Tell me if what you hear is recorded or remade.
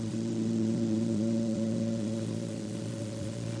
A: remade